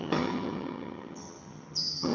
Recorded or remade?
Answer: remade